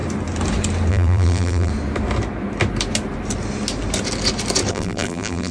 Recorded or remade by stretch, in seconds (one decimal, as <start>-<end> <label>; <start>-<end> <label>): 0.0-0.9 recorded; 0.9-1.7 remade; 1.7-4.7 recorded; 4.7-5.5 remade